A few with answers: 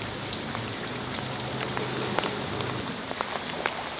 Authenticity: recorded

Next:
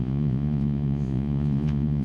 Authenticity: remade